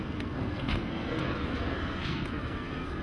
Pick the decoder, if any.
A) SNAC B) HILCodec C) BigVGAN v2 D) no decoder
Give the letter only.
A